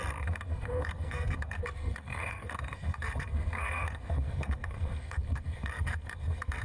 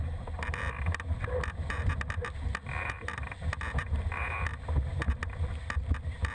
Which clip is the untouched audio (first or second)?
second